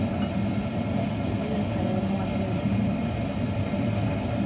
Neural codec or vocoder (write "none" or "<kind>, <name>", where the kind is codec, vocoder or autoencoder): none